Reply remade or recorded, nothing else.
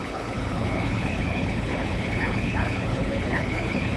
remade